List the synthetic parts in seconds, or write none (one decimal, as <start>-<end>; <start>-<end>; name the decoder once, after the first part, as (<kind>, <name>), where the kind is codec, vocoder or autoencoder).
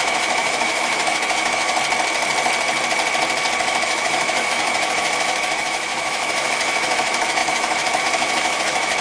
0.0-1.7 (autoencoder, DAC-VAE); 3.6-9.0